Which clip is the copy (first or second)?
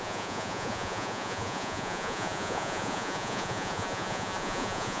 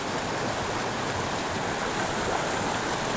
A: first